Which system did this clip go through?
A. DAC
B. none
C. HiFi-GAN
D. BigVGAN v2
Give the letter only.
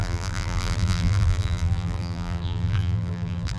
D